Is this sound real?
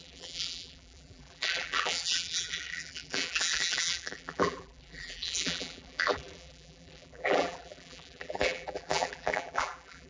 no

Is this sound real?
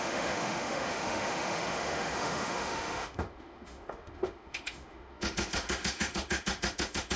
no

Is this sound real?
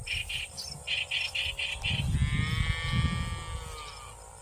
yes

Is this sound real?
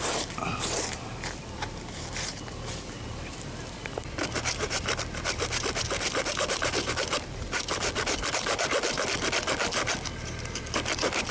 no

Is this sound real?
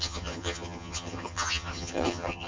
no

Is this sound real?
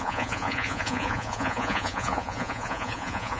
no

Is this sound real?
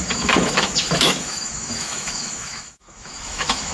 no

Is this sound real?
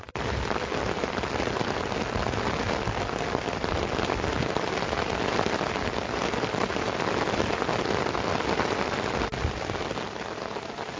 yes